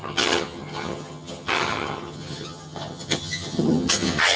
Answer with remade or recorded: remade